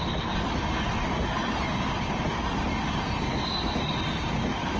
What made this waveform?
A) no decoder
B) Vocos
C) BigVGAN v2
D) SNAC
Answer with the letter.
A